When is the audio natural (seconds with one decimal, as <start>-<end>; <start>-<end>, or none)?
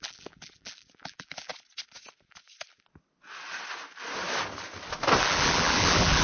1.5-5.2